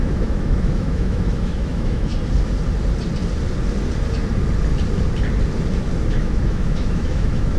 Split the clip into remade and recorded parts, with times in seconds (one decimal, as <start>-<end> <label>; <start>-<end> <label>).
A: 0.0-2.1 remade; 2.1-6.1 recorded; 6.1-7.6 remade